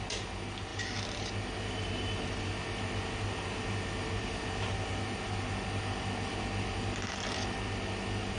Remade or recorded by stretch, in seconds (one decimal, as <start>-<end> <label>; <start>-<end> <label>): 0.0-8.4 recorded